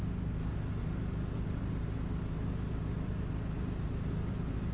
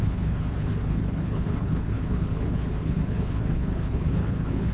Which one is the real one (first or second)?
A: first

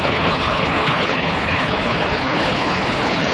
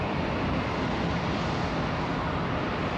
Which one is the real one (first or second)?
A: second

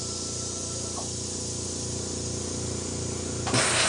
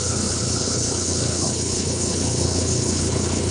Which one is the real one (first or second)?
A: first